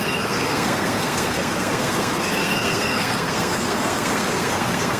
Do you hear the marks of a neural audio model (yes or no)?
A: yes